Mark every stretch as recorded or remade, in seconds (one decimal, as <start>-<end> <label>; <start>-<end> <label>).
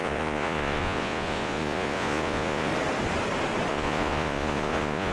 0.0-2.7 remade; 2.7-3.7 recorded; 3.7-5.1 remade